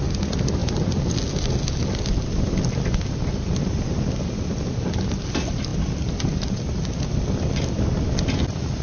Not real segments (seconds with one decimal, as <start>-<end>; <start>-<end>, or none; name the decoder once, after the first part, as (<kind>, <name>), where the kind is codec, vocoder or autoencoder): none

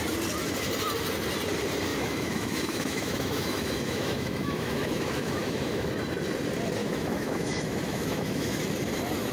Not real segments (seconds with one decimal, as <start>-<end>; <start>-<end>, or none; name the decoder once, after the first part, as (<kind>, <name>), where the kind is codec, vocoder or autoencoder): 1.9-5.9 (autoencoder, DAC-VAE); 6.8-8.6